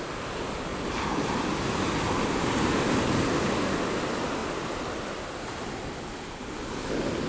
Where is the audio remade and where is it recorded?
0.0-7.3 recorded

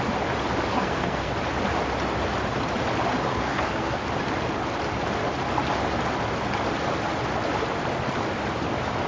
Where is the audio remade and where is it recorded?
0.0-0.7 recorded; 0.7-1.3 remade; 1.3-3.2 recorded; 3.2-4.0 remade; 4.0-9.1 recorded

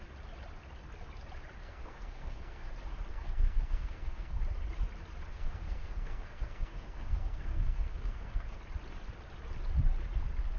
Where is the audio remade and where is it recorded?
0.0-1.6 recorded; 1.6-2.7 remade; 2.7-3.1 recorded; 3.1-4.4 remade; 4.4-5.3 recorded; 5.3-8.6 remade; 8.6-10.6 recorded

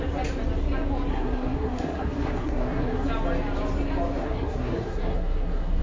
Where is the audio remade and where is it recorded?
0.0-1.1 recorded; 1.1-3.1 remade; 3.1-4.2 recorded; 4.2-5.8 remade

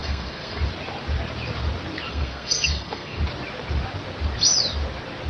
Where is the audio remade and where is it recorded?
0.0-0.6 remade; 0.6-2.1 recorded; 2.1-3.2 remade; 3.2-5.3 recorded

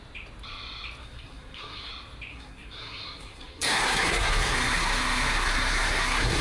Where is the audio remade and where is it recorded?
0.0-1.0 recorded; 1.0-1.9 remade; 1.9-2.3 recorded; 2.3-6.4 remade

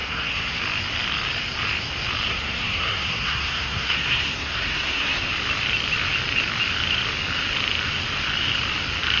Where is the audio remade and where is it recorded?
0.0-0.6 remade; 0.6-2.3 recorded; 2.3-5.3 remade; 5.3-9.2 recorded

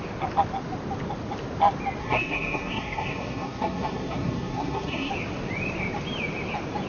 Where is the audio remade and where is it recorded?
0.0-2.0 recorded; 2.0-5.1 remade; 5.1-6.9 recorded